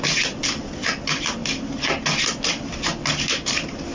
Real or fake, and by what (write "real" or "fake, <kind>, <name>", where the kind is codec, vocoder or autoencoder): real